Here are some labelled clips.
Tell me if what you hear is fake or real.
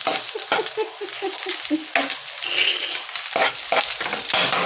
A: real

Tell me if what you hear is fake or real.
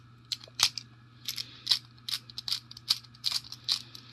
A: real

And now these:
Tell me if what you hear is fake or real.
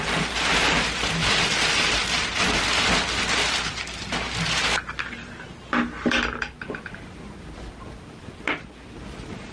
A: real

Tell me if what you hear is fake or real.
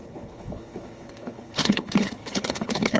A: fake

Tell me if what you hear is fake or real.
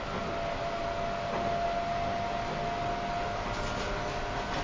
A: real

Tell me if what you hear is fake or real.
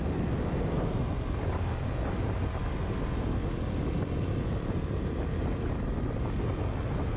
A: real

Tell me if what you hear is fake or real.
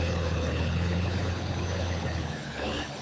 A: fake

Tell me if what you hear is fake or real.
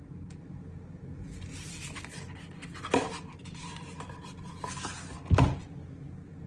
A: real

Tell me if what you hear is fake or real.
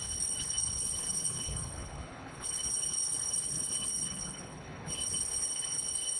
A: fake